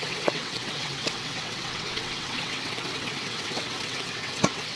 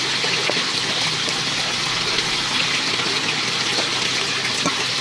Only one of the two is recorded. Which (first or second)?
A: second